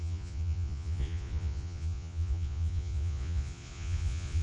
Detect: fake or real fake